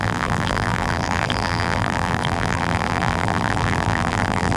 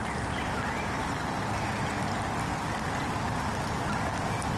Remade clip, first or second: first